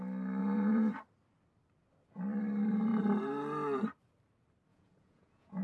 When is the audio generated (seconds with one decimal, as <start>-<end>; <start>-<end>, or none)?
0.4-0.9; 4.7-5.6